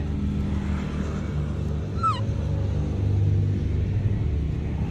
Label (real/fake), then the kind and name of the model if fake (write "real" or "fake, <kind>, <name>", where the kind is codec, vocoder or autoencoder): real